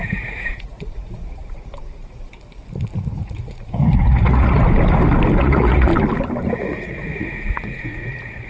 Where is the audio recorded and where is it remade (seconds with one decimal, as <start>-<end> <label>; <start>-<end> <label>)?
0.0-2.3 remade; 2.3-3.1 recorded; 3.1-4.6 remade; 4.6-5.4 recorded; 5.4-5.9 remade; 5.9-6.6 recorded; 6.6-8.5 remade